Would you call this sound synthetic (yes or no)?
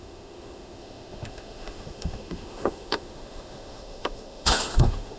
yes